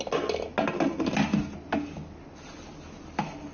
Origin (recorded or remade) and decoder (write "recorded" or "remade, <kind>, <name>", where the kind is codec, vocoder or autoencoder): recorded